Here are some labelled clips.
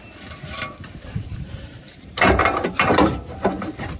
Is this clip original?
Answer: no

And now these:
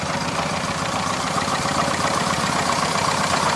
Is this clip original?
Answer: no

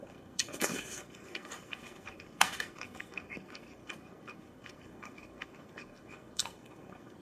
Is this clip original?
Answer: no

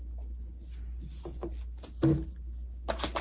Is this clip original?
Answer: yes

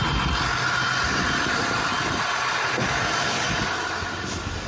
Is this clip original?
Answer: yes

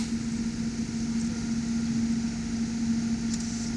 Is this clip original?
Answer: yes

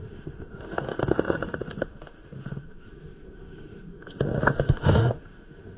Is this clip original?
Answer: no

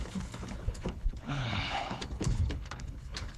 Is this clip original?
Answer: no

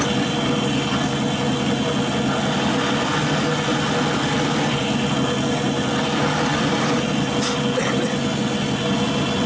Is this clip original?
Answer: yes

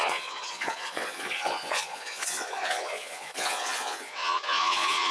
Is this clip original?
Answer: no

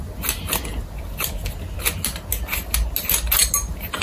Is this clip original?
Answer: yes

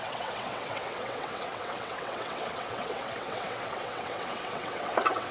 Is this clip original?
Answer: no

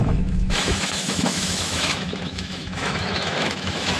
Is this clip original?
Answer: no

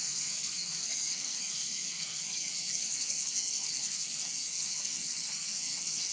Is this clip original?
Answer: no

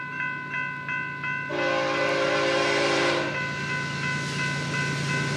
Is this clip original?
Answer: yes